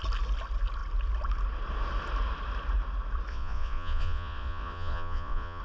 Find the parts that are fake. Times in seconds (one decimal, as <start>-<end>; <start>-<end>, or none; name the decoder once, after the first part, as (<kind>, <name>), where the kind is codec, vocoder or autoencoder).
3.3-5.6 (vocoder, Vocos)

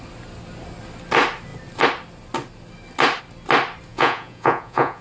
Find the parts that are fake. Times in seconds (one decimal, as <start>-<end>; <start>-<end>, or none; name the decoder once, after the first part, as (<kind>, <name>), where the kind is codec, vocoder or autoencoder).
3.9-5.0 (vocoder, Vocos)

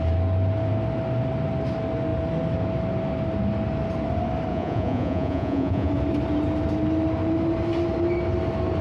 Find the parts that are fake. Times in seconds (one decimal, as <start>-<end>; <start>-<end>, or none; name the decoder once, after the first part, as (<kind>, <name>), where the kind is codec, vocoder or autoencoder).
4.5-5.9 (vocoder, Vocos)

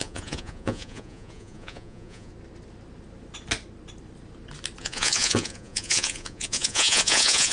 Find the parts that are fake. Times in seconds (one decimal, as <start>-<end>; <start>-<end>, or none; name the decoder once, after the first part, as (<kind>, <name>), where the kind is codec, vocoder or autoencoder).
0.0-2.3 (vocoder, Vocos); 4.8-7.5

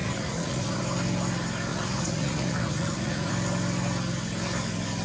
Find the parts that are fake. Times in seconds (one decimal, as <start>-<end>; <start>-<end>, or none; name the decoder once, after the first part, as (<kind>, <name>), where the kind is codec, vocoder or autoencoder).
0.0-0.8 (vocoder, Vocos); 1.7-3.3